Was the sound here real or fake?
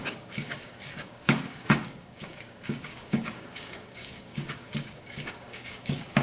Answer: fake